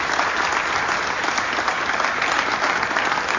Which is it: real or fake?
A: real